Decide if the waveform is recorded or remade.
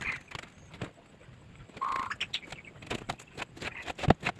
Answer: recorded